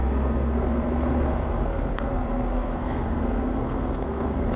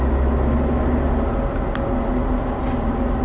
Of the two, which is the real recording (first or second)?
second